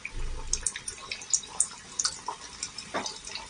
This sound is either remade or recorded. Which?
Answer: recorded